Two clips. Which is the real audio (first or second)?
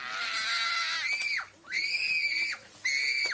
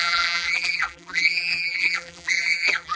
first